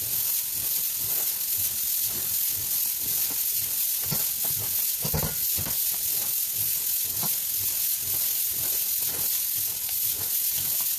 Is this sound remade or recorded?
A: recorded